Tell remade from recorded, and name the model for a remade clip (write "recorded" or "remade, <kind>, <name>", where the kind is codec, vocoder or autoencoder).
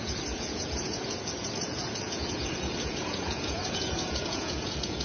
remade, vocoder, Vocos